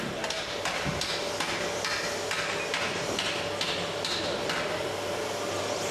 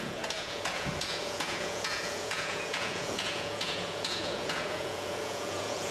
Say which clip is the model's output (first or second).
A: second